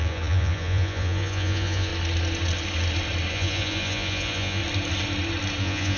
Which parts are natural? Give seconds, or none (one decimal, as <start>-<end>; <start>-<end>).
1.9-3.3; 4.6-5.6